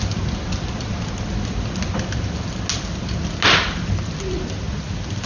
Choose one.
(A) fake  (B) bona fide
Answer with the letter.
B